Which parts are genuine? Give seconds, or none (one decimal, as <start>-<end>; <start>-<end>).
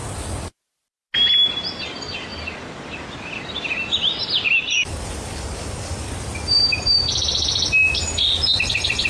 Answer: 0.0-9.1